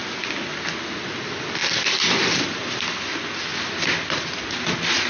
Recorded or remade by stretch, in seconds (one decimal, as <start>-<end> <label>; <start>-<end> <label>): 0.0-1.6 recorded; 1.6-2.4 remade; 2.4-3.5 recorded; 3.5-4.4 remade; 4.4-5.1 recorded

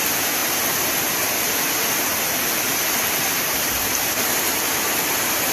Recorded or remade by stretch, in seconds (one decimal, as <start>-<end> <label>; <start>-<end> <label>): 0.0-5.5 recorded